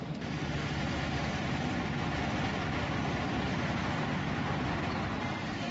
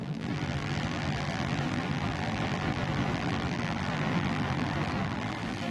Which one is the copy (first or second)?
second